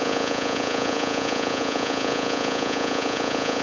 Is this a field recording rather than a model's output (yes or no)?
no